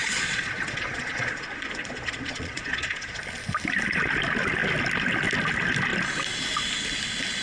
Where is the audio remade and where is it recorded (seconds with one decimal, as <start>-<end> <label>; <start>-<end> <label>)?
0.0-3.2 remade; 3.2-7.4 recorded